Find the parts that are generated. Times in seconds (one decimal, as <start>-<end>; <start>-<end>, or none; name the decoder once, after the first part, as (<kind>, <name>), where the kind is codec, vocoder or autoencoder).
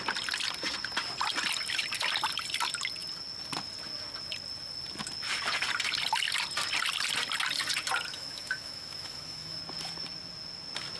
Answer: 8.1-9.6 (autoencoder, DAC-VAE)